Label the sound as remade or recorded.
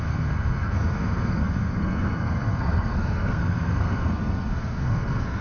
remade